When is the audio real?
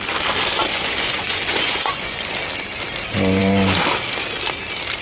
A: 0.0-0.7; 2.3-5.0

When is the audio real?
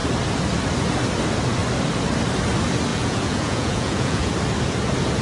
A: 0.0-2.9; 4.3-5.2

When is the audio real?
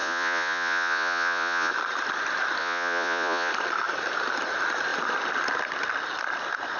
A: 1.7-2.6; 3.5-6.8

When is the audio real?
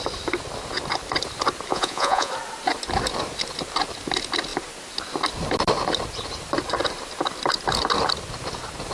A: 0.0-1.7; 2.3-8.9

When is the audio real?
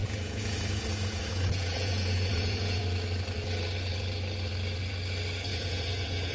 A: 2.8-5.5